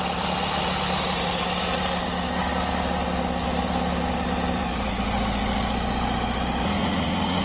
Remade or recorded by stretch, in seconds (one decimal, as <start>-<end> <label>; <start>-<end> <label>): 0.0-6.8 recorded; 6.8-7.4 remade